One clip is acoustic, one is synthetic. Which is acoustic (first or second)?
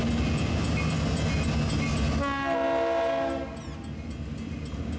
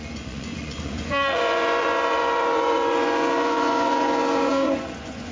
first